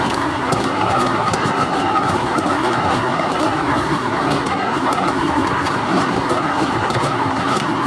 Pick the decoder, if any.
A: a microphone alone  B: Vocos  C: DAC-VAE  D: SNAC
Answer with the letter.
D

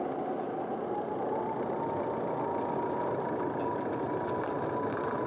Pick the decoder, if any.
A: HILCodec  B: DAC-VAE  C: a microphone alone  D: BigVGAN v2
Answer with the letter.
C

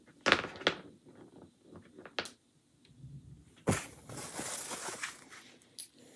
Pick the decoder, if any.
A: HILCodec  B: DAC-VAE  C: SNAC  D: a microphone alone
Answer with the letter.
D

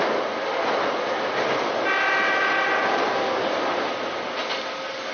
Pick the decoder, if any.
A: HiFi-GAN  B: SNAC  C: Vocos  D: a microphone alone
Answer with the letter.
D